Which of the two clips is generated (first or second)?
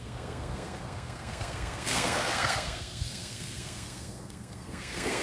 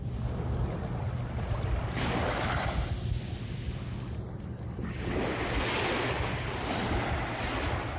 first